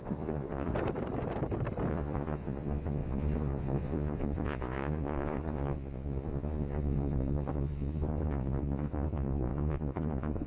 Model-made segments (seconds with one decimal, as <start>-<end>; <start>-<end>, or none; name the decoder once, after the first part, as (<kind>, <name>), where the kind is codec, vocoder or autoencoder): 0.0-0.7 (vocoder, Vocos); 1.9-10.5